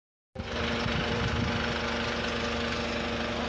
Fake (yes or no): no